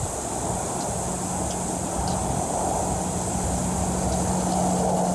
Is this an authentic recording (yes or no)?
yes